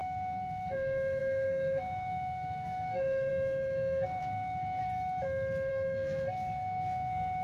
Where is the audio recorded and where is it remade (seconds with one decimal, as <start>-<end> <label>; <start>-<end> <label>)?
0.0-4.8 remade; 4.8-5.7 recorded; 5.7-7.4 remade